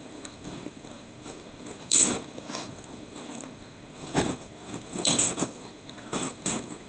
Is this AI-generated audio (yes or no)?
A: yes